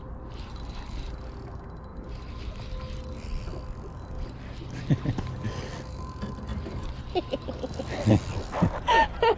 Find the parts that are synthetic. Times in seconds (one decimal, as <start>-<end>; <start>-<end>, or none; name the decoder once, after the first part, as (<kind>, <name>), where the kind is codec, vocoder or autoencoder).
6.5-7.0 (vocoder, BigVGAN v2)